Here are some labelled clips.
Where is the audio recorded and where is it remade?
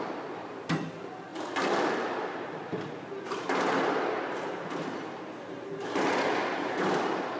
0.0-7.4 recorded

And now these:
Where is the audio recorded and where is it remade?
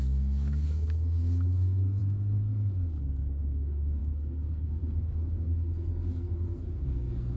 0.0-7.4 remade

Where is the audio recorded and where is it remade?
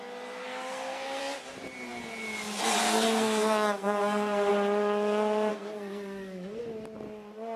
0.0-0.4 recorded; 0.4-1.2 remade; 1.2-2.8 recorded; 2.8-4.5 remade; 4.5-5.5 recorded; 5.5-6.6 remade; 6.6-7.6 recorded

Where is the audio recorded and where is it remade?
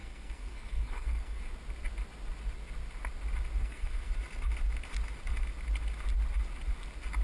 0.0-1.4 remade; 1.4-3.6 recorded; 3.6-4.1 remade; 4.1-7.2 recorded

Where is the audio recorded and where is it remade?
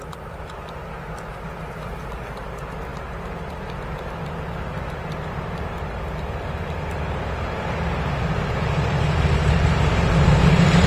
0.0-10.9 recorded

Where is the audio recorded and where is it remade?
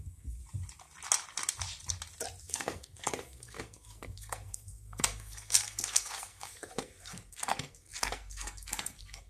0.0-0.4 remade; 0.4-2.4 recorded; 2.4-9.3 remade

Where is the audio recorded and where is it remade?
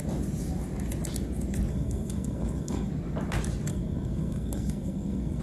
0.0-1.7 recorded; 1.7-2.9 remade; 2.9-3.7 recorded; 3.7-5.4 remade